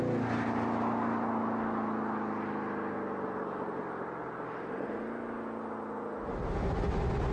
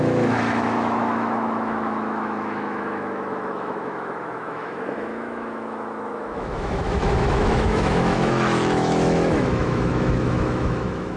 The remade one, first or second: second